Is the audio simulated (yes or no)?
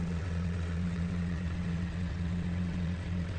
yes